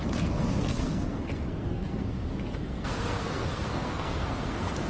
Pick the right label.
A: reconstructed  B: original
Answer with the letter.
A